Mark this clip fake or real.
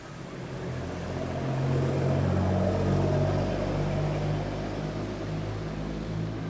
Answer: real